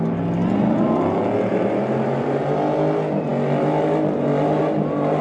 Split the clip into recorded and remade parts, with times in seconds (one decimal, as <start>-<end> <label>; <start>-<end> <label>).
0.0-1.5 recorded; 1.5-2.4 remade; 2.4-5.2 recorded